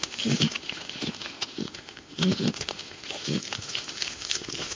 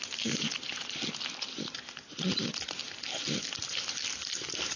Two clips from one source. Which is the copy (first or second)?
first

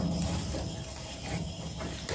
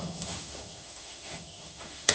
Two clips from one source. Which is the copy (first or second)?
second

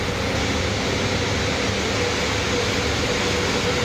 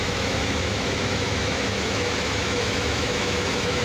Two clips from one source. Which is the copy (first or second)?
second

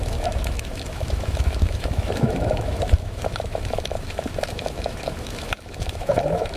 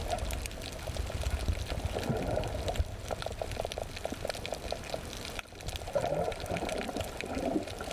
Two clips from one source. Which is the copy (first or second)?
first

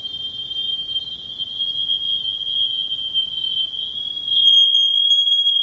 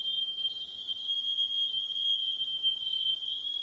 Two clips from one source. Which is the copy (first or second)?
second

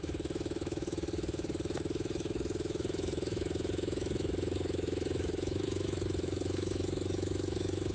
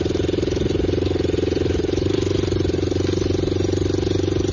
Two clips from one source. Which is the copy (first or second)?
first